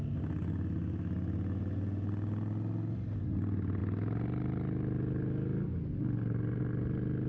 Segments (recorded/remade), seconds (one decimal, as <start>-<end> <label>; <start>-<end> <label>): 0.0-7.3 recorded